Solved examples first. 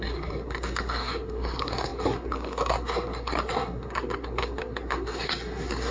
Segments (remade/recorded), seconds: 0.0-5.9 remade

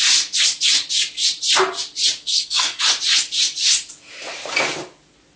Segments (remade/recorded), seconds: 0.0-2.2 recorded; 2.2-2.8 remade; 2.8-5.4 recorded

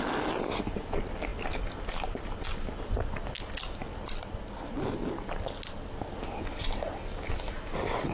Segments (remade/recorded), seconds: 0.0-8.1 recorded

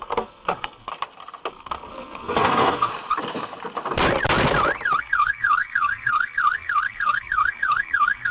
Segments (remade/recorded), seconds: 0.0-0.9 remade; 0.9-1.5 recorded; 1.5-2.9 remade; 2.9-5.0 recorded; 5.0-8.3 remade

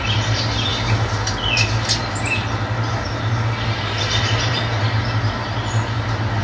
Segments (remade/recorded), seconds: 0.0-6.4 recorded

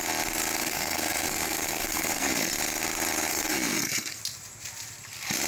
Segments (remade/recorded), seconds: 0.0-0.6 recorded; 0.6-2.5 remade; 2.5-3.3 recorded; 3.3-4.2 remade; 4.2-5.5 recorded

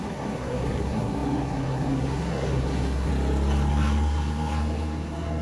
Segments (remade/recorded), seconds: 0.0-3.1 remade; 3.1-3.7 recorded; 3.7-5.4 remade